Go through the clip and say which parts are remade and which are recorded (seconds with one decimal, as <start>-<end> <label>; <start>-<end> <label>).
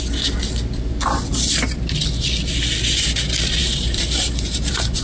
0.0-3.6 recorded; 3.6-5.0 remade